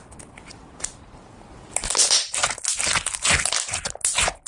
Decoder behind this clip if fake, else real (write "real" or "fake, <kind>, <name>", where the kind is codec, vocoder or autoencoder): real